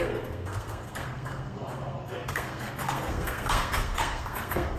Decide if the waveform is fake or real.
fake